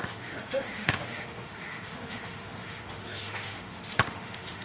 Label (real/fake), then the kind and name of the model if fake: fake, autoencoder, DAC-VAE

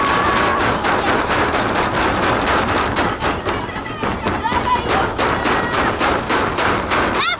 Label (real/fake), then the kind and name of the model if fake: real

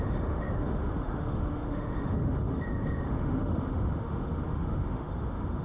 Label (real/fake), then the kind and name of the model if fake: fake, autoencoder, DAC-VAE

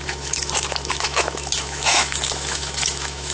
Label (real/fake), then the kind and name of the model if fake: fake, autoencoder, DAC-VAE